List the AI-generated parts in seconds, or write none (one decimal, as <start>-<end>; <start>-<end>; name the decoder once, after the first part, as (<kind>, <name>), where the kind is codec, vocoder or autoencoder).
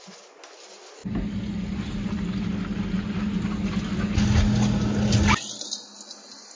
none